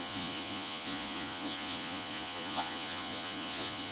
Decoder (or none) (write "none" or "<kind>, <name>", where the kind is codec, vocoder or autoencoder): vocoder, Vocos